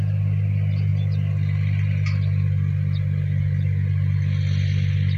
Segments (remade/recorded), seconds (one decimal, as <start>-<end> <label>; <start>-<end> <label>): 0.0-5.2 recorded

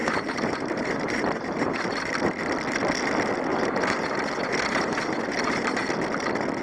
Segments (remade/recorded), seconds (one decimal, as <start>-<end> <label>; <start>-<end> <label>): 0.0-2.4 remade; 2.4-3.5 recorded; 3.5-5.8 remade; 5.8-6.6 recorded

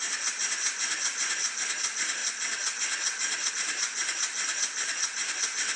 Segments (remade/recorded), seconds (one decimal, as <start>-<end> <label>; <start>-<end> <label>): 0.0-5.8 recorded